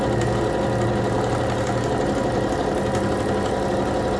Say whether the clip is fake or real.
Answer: real